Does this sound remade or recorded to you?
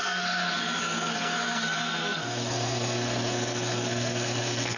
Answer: remade